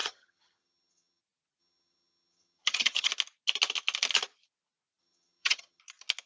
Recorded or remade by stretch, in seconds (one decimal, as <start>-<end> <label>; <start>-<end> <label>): 0.0-1.2 remade; 1.2-1.6 recorded; 1.6-3.1 remade; 3.1-5.0 recorded; 5.0-5.8 remade; 5.8-6.3 recorded